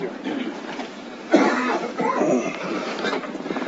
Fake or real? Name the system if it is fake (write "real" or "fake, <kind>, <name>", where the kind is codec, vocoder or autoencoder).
fake, vocoder, BigVGAN v2